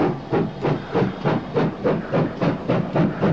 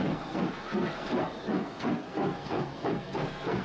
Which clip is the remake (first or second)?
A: second